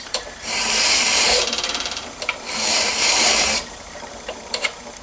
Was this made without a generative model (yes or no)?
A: no